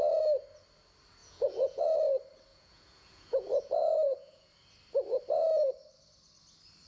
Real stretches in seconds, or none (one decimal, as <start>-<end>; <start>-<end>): 0.0-1.2; 1.8-2.5; 4.5-6.9